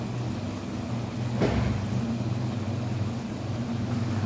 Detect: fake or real real